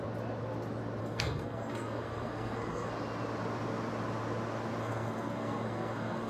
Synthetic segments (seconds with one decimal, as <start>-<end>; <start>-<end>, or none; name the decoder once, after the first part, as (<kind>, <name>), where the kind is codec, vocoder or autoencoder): 1.0-2.9 (codec, SNAC); 4.8-6.3